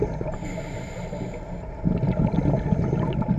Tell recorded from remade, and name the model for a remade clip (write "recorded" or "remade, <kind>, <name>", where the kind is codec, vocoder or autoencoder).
recorded